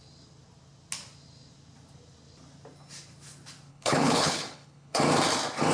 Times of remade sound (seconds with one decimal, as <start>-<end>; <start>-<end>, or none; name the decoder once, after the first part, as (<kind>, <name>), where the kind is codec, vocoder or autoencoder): 3.7-5.0 (codec, HILCodec)